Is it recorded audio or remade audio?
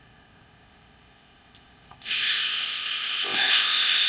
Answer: remade